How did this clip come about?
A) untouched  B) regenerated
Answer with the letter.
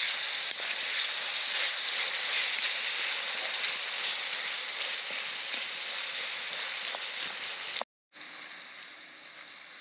A